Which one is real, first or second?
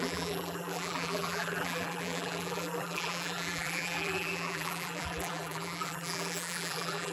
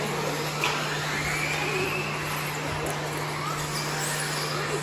second